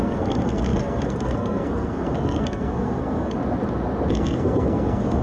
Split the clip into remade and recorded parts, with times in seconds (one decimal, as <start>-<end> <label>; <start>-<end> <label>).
0.0-3.4 remade; 3.4-4.1 recorded; 4.1-5.2 remade